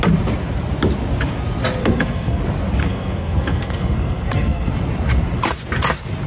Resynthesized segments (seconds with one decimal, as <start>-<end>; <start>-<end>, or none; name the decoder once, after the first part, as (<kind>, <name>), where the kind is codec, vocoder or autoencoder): 1.8-2.4 (codec, SNAC); 2.8-4.7